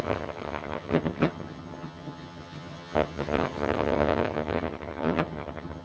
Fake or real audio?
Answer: fake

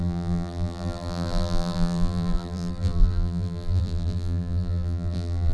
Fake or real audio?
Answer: fake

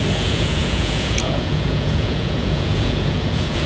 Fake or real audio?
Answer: fake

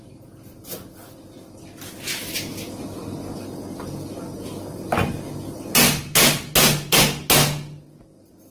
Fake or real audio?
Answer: real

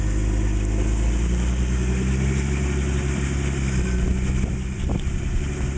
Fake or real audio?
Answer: real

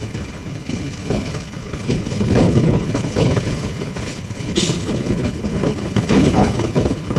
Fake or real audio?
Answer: fake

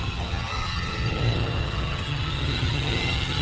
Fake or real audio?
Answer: fake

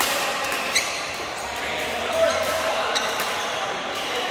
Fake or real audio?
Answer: fake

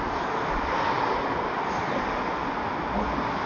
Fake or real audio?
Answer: real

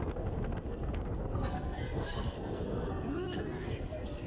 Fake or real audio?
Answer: fake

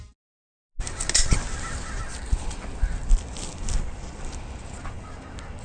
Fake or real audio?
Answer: real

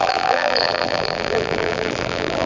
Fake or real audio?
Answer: fake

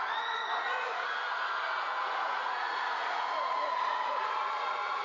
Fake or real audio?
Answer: fake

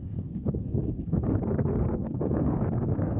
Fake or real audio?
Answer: fake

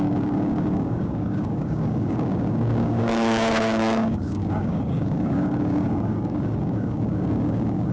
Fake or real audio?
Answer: fake